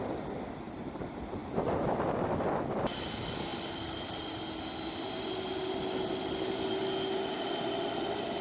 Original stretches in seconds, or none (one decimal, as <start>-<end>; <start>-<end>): 0.0-8.4